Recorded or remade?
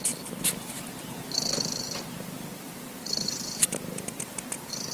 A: remade